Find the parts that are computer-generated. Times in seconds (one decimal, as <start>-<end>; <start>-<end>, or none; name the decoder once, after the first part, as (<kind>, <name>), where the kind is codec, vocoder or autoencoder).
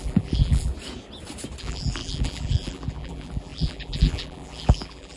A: 0.0-0.7 (vocoder, BigVGAN v2); 1.6-5.2